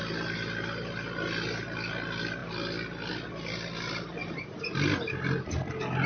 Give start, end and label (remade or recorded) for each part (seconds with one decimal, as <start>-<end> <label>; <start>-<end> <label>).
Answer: 0.0-6.1 recorded